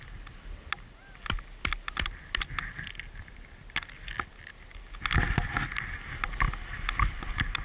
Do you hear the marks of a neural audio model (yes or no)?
no